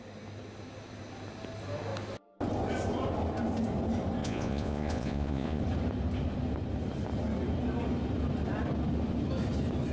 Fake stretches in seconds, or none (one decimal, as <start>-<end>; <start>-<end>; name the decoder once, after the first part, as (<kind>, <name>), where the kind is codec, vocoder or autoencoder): 4.2-5.6 (vocoder, Vocos)